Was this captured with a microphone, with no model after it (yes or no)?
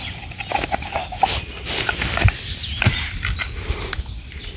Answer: yes